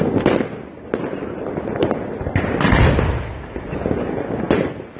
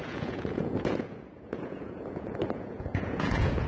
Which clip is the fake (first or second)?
second